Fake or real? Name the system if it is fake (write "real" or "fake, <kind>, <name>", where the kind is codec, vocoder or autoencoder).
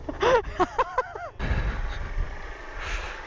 real